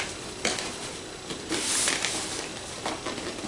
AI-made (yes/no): no